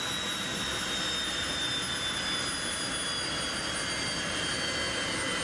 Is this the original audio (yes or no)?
yes